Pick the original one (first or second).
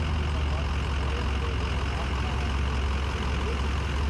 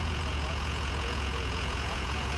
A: first